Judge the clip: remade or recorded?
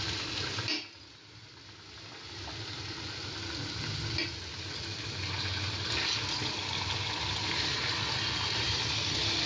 recorded